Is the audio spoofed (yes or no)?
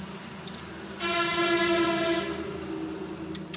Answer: no